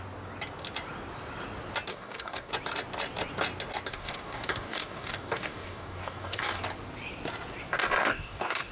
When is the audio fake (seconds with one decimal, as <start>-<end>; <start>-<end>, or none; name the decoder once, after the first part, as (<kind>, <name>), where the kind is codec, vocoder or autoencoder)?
1.9-2.5 (codec, DAC); 3.9-6.6; 8.0-8.7